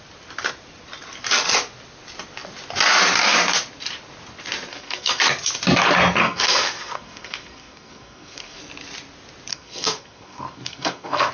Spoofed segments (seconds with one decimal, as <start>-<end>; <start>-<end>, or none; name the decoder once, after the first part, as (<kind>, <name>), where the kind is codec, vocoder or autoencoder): 4.7-5.2 (codec, SNAC); 6.2-8.6; 9.5-11.3